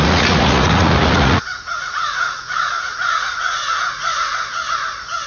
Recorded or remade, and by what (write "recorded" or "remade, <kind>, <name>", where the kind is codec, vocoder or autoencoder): remade, vocoder, Vocos